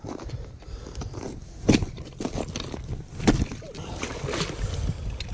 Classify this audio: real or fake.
real